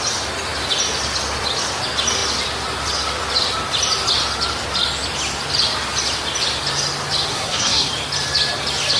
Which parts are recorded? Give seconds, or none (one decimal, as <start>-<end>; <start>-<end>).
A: 0.0-7.3; 7.9-9.0